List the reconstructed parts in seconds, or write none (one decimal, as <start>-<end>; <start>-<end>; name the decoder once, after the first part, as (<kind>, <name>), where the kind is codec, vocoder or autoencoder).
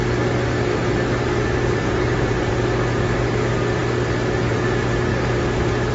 0.7-2.5 (vocoder, BigVGAN v2); 5.1-5.9